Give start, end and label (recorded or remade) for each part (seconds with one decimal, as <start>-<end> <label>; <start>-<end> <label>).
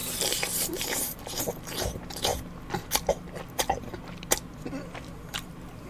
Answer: 0.0-1.4 remade; 1.4-5.9 recorded